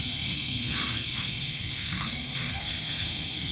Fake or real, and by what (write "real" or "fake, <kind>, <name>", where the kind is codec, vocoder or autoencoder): fake, codec, SNAC